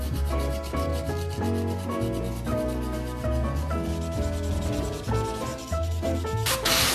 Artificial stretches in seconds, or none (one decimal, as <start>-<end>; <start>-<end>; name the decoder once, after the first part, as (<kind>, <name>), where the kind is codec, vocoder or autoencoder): 0.0-0.9 (vocoder, BigVGAN v2); 4.5-6.9